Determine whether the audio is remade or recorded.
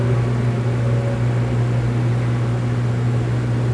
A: recorded